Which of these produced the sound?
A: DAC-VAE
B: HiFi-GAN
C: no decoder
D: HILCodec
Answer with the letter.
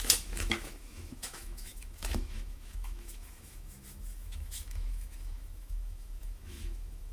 A